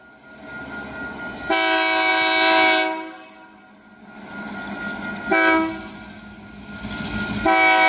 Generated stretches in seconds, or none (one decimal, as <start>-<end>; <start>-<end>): none